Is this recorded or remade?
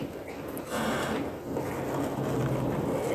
recorded